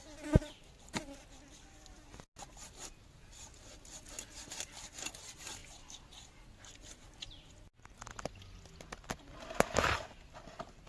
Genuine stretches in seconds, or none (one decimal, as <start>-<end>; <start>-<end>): 0.0-10.9